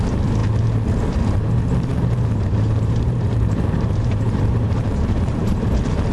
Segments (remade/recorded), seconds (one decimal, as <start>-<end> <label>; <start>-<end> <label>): 0.0-1.9 recorded; 1.9-5.6 remade; 5.6-6.1 recorded